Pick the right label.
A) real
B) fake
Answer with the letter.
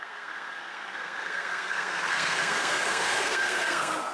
B